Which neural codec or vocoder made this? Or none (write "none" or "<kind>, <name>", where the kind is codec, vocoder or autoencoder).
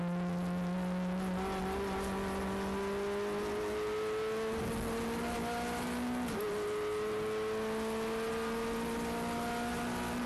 none